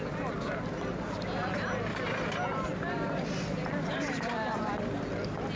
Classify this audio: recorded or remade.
recorded